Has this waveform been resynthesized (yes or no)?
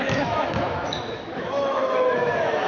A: yes